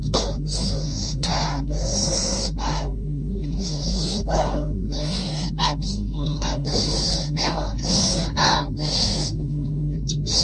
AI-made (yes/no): yes